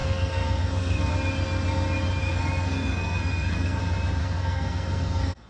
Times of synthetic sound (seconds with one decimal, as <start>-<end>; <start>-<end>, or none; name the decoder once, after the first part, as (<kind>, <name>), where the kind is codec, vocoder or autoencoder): 0.0-1.1 (codec, SNAC); 2.2-3.8; 4.2-5.5